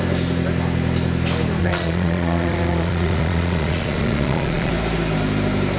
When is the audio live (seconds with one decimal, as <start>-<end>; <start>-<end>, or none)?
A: 0.0-1.6; 4.7-5.8